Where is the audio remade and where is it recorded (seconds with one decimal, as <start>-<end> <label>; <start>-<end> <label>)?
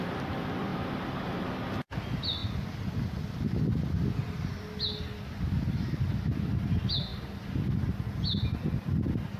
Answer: 0.0-7.1 recorded; 7.1-7.7 remade; 7.7-9.4 recorded